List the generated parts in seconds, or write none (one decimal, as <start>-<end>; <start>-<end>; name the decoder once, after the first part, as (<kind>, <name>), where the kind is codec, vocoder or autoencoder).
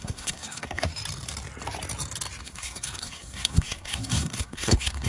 0.0-0.9 (codec, SNAC); 2.4-5.1